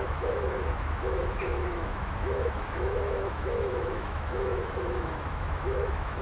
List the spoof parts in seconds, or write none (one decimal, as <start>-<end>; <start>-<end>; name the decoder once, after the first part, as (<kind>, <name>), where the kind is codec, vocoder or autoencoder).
0.0-6.2 (autoencoder, DAC-VAE)